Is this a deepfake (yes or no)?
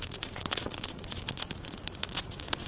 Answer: yes